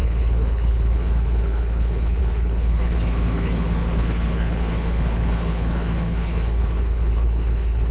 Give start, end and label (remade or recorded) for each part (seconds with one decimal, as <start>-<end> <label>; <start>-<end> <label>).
0.0-7.9 remade

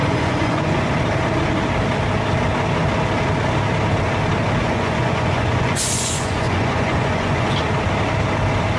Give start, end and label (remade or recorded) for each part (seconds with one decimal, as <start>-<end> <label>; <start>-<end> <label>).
0.0-0.9 remade; 0.9-4.6 recorded; 4.6-7.6 remade; 7.6-8.8 recorded

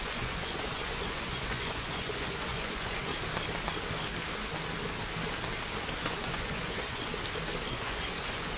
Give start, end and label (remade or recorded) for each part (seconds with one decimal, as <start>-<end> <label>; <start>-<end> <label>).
0.0-3.1 remade; 3.1-6.0 recorded; 6.0-7.1 remade; 7.1-7.7 recorded; 7.7-8.6 remade

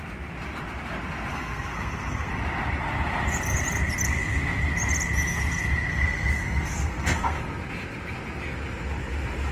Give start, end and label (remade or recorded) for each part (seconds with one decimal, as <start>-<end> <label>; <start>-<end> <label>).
0.0-1.3 recorded; 1.3-2.3 remade; 2.3-5.9 recorded; 5.9-7.4 remade; 7.4-9.5 recorded